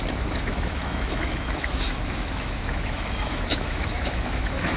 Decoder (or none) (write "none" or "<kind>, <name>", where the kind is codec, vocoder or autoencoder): autoencoder, DAC-VAE